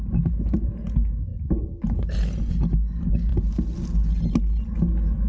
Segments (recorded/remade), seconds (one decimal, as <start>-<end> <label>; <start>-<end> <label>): 0.0-5.3 recorded